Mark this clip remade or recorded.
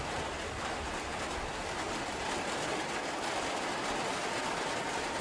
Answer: recorded